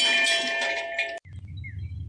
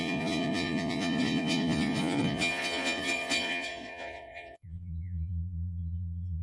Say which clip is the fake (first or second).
second